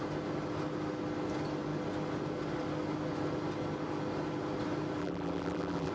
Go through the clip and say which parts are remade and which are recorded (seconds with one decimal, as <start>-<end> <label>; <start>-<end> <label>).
0.0-5.0 recorded; 5.0-5.9 remade